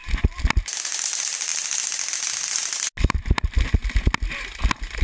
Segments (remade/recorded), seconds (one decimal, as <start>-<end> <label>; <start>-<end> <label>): 0.0-5.0 recorded